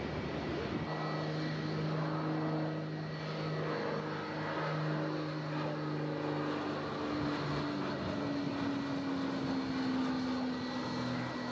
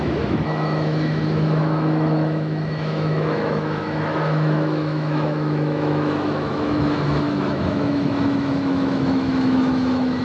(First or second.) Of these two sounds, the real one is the first